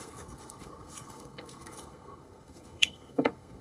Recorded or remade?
remade